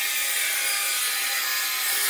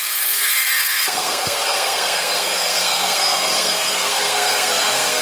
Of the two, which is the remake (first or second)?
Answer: second